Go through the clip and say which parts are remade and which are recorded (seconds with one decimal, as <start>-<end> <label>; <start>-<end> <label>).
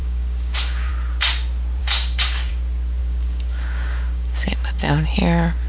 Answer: 0.0-0.9 remade; 0.9-1.8 recorded; 1.8-2.5 remade; 2.5-3.0 recorded; 3.0-5.1 remade; 5.1-5.7 recorded